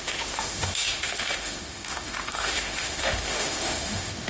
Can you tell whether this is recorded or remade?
remade